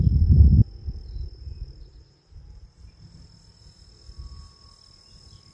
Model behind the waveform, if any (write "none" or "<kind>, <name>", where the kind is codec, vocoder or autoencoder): none